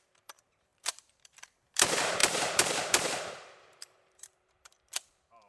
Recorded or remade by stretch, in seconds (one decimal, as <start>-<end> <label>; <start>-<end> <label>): 0.0-5.5 remade